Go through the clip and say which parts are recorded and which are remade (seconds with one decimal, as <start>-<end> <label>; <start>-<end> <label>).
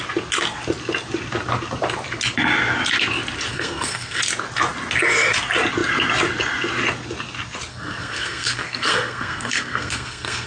0.0-3.5 recorded; 3.5-4.2 remade; 4.2-7.7 recorded; 7.7-10.5 remade